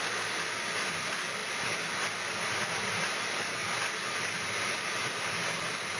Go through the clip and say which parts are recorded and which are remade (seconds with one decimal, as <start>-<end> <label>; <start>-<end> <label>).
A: 0.0-6.0 recorded